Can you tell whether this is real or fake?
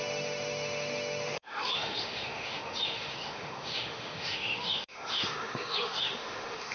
fake